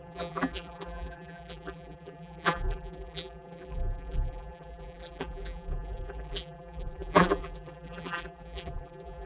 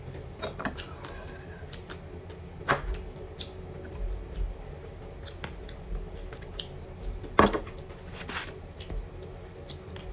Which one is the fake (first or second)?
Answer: first